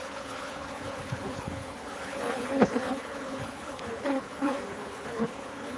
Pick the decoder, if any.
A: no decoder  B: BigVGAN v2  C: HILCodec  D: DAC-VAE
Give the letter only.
C